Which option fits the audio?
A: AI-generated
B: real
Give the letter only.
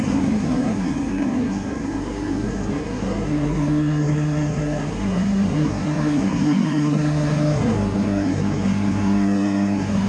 A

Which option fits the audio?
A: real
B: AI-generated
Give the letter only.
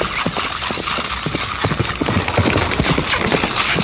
A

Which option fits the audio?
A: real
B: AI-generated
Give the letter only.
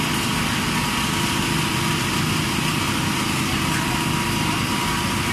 A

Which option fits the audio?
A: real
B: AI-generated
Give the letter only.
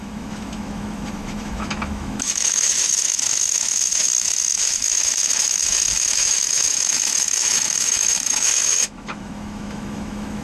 B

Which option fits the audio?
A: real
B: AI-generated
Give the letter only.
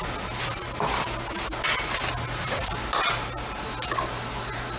A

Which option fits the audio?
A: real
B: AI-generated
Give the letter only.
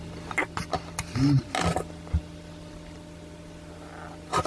A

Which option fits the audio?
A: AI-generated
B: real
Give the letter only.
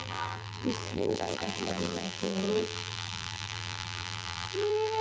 A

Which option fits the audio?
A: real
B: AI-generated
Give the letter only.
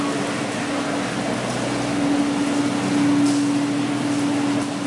A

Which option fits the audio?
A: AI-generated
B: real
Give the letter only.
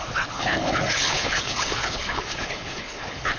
A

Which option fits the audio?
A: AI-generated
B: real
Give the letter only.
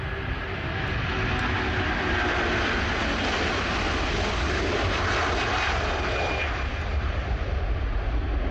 B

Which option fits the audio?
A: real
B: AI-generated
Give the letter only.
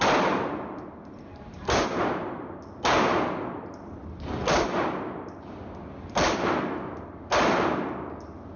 A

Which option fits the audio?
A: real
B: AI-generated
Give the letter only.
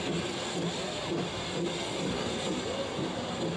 A